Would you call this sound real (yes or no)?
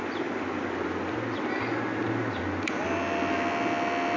yes